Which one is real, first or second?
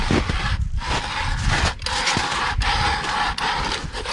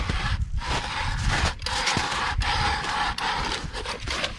first